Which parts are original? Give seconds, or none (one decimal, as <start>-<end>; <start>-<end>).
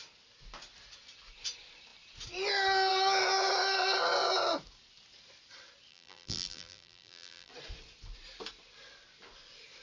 0.0-5.9; 7.5-9.8